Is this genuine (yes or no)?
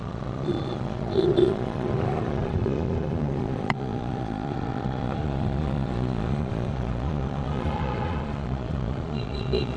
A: no